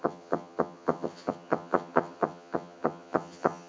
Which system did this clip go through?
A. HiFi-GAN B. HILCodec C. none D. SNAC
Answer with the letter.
A